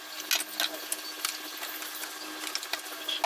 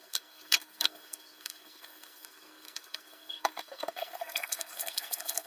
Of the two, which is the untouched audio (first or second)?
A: first